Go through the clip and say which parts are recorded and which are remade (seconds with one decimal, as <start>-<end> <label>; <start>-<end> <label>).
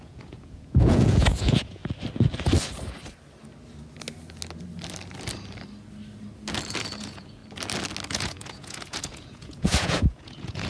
0.0-1.8 remade; 1.8-7.0 recorded; 7.0-7.4 remade; 7.4-8.1 recorded; 8.1-10.7 remade